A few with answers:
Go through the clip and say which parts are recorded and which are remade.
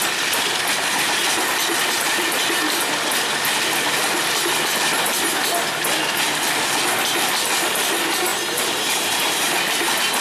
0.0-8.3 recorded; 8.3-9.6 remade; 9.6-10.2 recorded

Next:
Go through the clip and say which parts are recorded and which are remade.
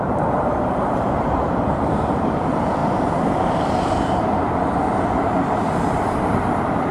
0.0-6.9 remade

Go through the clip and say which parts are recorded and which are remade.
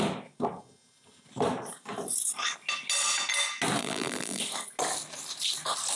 0.0-3.8 recorded; 3.8-4.4 remade; 4.4-6.0 recorded